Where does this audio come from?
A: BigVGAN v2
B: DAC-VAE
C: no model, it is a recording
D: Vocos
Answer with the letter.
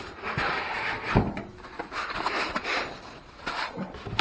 A